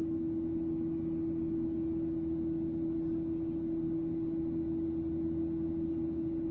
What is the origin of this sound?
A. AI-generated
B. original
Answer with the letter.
B